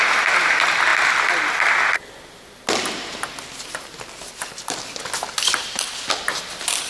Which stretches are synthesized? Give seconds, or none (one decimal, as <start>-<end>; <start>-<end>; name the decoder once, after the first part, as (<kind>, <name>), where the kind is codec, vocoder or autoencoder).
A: none